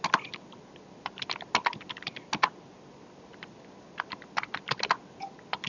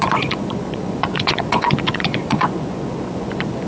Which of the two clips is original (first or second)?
first